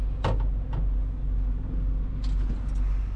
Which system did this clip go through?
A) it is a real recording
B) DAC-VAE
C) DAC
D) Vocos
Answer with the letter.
A